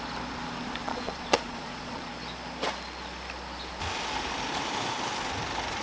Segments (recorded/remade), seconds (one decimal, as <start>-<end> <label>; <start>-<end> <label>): 0.0-0.8 recorded; 0.8-2.1 remade; 2.1-5.8 recorded